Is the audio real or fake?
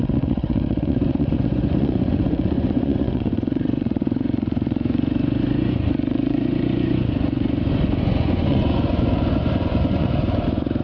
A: fake